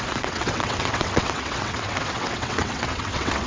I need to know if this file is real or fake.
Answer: fake